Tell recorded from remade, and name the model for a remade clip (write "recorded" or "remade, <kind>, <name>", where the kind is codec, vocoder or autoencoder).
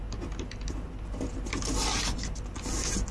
recorded